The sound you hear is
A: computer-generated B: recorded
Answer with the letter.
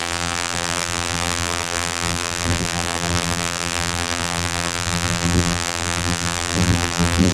A